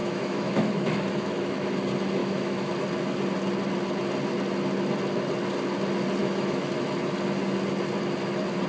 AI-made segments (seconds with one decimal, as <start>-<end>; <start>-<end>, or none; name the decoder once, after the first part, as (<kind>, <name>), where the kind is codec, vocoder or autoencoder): 0.0-1.7 (autoencoder, DAC-VAE); 2.2-2.7; 6.2-6.7